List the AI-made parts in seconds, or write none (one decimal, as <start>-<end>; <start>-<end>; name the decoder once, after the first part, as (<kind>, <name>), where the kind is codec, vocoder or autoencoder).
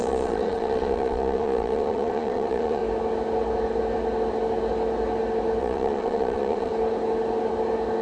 0.0-2.8 (vocoder, Vocos); 5.6-6.7